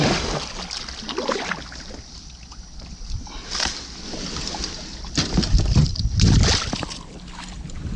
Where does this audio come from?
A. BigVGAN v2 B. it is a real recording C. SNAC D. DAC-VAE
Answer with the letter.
B